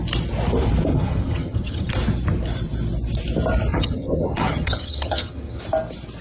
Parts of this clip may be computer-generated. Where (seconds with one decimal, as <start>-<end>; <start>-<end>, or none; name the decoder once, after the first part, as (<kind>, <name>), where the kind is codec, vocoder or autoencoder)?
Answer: 0.9-1.9 (vocoder, HiFi-GAN); 3.7-5.6